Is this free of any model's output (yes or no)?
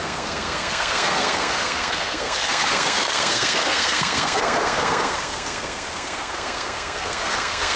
no